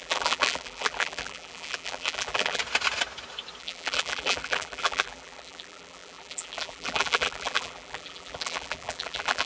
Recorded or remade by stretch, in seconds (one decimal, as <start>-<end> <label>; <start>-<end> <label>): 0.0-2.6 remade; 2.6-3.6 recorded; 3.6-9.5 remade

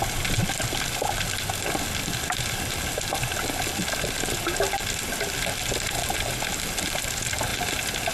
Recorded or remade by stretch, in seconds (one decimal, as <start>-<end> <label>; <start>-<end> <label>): 0.0-8.1 recorded

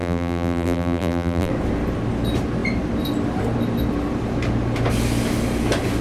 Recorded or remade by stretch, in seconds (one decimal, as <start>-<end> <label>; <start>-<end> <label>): 0.0-1.5 remade; 1.5-6.0 recorded